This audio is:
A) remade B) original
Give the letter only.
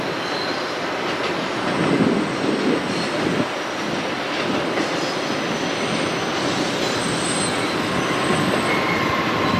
B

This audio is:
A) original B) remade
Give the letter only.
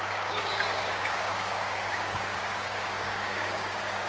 B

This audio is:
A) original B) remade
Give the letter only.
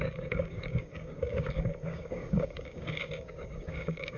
B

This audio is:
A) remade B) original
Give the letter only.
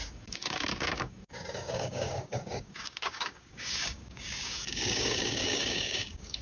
A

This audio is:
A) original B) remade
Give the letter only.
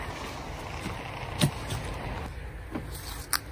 A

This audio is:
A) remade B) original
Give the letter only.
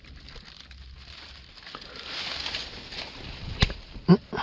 B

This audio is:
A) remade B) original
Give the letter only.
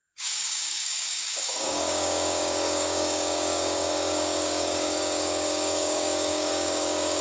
A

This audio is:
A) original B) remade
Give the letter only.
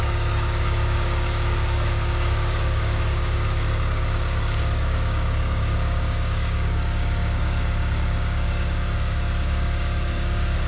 B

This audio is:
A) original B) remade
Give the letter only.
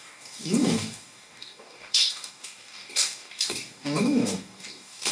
B